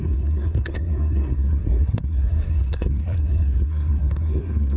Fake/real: fake